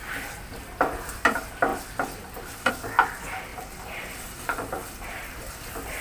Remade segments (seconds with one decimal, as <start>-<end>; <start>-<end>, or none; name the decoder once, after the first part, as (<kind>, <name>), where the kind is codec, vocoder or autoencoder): 1.7-2.7 (vocoder, BigVGAN v2); 3.5-5.6